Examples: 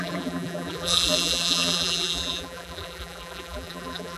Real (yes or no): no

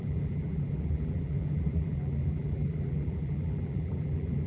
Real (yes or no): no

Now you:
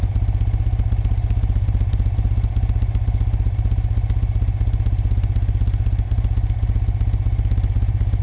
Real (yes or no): yes